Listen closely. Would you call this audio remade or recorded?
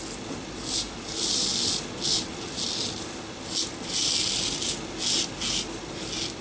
recorded